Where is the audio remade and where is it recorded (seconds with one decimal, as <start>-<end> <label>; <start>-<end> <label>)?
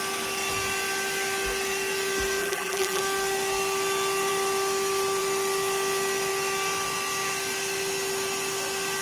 0.0-2.4 recorded; 2.4-3.0 remade; 3.0-9.0 recorded